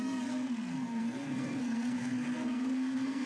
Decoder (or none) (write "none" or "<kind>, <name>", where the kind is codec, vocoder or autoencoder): codec, SNAC